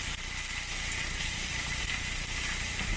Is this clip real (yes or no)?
yes